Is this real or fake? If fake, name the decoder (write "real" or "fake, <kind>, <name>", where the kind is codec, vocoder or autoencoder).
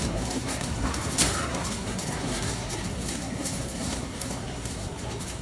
fake, codec, SNAC